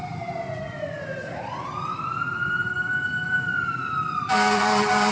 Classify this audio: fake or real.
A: fake